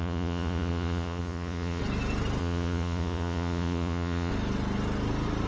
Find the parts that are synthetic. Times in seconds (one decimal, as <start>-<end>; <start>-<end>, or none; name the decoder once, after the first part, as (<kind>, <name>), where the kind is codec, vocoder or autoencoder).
0.0-1.8 (vocoder, Vocos); 2.4-4.3